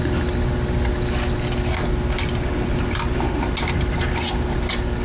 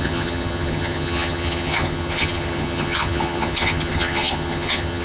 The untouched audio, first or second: first